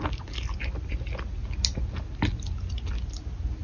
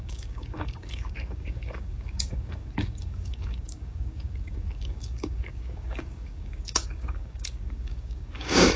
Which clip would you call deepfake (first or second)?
second